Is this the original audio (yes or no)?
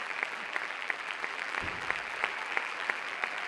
no